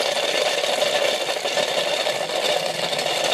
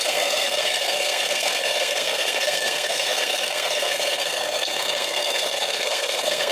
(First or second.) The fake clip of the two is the second